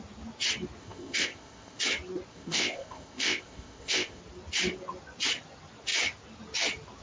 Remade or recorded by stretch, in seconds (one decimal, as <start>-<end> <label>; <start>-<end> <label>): 0.0-0.8 recorded; 0.8-1.8 remade; 1.8-2.3 recorded; 2.3-4.2 remade; 4.2-7.0 recorded